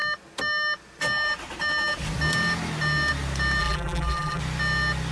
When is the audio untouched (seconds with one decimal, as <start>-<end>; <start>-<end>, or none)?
0.0-3.6; 4.4-5.1